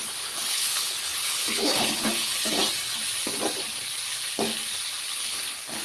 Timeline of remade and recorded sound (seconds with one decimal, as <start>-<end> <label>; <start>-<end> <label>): 0.0-2.3 remade; 2.3-5.1 recorded; 5.1-5.8 remade